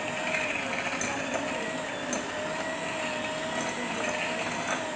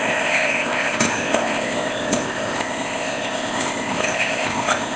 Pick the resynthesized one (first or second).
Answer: second